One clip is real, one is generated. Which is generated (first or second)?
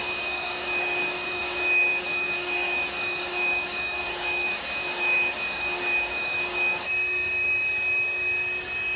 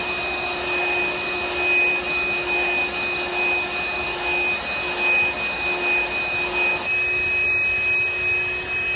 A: first